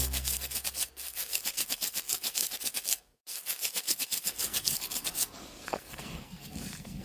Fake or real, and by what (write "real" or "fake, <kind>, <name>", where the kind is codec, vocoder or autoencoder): fake, codec, SNAC